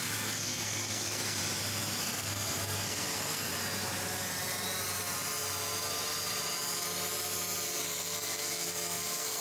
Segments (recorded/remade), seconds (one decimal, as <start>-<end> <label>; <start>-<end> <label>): 0.0-1.4 remade; 1.4-2.0 recorded; 2.0-3.5 remade; 3.5-7.8 recorded; 7.8-9.4 remade